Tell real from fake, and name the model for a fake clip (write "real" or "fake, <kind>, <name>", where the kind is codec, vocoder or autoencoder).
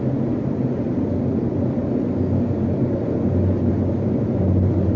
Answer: real